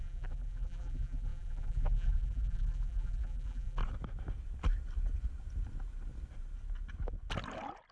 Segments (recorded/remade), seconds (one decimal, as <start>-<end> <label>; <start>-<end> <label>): 0.0-3.8 remade; 3.8-7.9 recorded